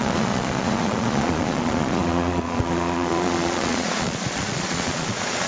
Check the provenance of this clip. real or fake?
fake